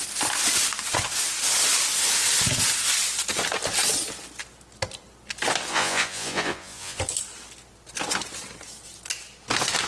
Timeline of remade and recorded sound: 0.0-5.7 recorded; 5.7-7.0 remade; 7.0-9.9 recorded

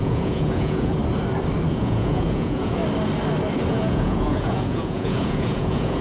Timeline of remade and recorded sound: 0.0-1.0 remade; 1.0-1.7 recorded; 1.7-2.8 remade; 2.8-3.7 recorded; 3.7-6.0 remade